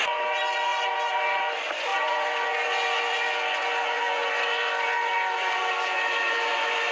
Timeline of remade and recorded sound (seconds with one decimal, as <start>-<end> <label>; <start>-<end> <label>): 0.0-6.9 remade